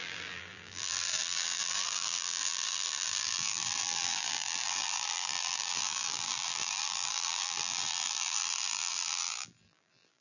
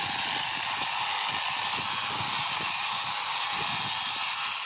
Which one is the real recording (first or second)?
second